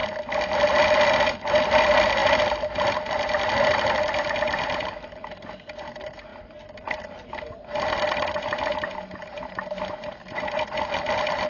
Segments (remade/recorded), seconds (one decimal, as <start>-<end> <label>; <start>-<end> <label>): 0.0-11.5 recorded